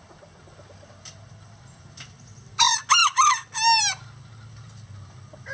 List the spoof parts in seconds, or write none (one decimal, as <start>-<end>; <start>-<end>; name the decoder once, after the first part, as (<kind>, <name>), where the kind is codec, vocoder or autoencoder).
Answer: none